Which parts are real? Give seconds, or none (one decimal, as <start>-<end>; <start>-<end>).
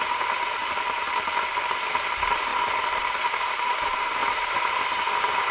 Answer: 0.6-1.9; 2.5-3.2